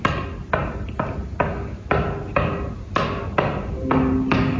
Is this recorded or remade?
recorded